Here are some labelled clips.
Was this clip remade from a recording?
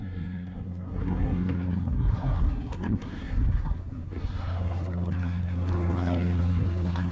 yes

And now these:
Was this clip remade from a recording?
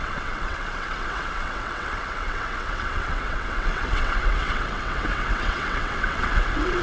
yes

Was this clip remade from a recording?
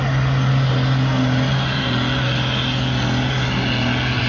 no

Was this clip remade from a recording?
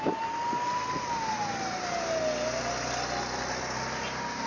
no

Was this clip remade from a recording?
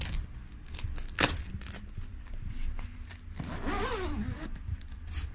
no